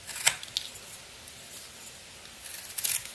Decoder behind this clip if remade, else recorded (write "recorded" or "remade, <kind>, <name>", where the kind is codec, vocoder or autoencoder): recorded